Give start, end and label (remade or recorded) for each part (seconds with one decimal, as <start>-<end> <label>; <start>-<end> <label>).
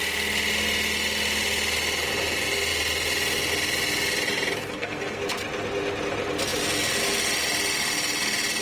0.0-4.6 recorded; 4.6-5.2 remade; 5.2-8.6 recorded